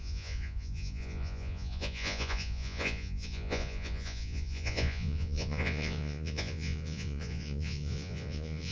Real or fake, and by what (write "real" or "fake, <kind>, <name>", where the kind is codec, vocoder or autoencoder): fake, vocoder, Vocos